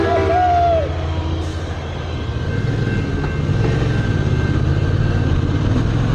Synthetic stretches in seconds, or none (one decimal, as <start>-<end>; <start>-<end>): none